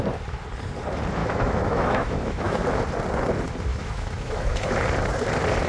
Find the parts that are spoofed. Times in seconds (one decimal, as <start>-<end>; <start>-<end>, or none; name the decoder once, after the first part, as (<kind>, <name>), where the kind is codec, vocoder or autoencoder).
1.2-2.6 (autoencoder, DAC-VAE); 3.7-4.7